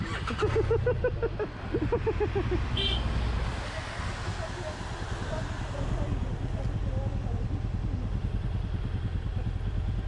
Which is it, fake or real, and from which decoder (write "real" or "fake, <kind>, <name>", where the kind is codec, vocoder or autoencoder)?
real